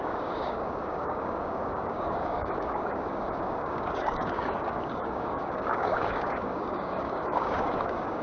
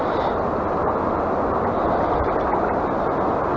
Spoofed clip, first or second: first